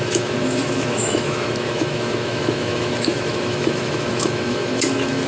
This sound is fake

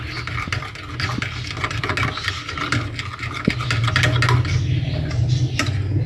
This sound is real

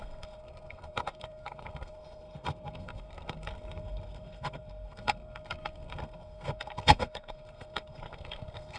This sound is fake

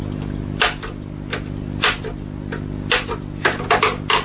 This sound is real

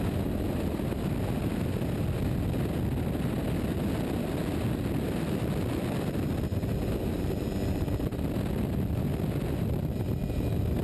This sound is real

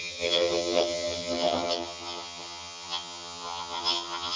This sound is fake